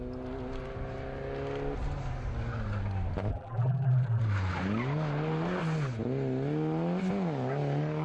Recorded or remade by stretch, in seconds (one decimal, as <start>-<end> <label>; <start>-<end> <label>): 0.0-3.3 recorded; 3.3-4.2 remade; 4.2-8.0 recorded